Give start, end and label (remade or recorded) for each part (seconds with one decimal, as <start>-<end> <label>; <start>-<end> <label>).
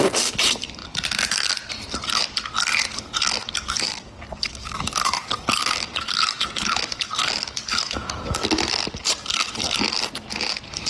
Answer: 0.0-3.4 recorded; 3.4-8.5 remade; 8.5-10.9 recorded